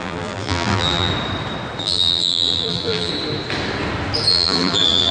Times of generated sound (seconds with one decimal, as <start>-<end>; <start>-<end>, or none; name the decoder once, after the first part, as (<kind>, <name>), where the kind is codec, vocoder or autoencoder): 0.0-1.1 (vocoder, BigVGAN v2); 1.8-3.1; 4.3-5.1